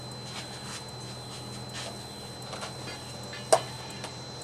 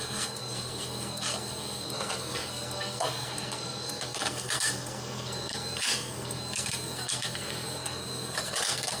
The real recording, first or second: first